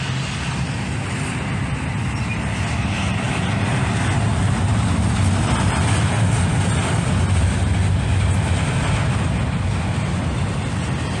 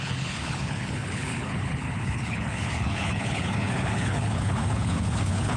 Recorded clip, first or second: first